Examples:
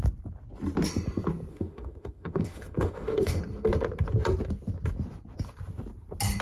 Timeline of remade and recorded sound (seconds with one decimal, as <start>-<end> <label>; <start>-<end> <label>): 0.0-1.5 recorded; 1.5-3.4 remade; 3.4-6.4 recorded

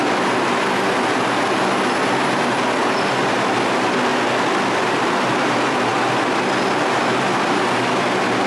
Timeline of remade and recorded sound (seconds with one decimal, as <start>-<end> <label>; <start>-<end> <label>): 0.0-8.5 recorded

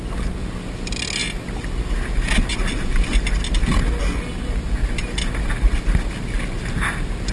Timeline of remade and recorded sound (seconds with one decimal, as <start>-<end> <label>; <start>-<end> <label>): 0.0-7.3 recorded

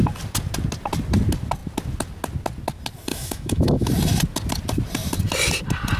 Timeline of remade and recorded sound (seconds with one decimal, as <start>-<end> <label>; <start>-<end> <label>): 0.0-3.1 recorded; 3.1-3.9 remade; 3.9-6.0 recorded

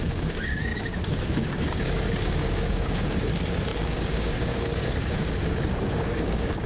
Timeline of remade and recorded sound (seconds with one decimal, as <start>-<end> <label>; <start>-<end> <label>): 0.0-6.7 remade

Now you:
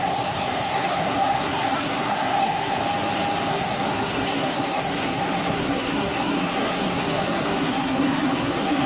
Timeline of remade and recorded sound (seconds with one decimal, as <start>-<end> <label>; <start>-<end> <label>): 0.0-2.8 remade; 2.8-3.5 recorded; 3.5-8.9 remade